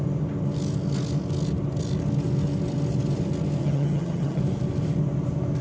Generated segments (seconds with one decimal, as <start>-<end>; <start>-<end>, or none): 3.6-4.4